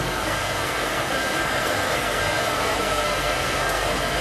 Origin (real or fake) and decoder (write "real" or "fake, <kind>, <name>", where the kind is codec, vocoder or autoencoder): fake, codec, SNAC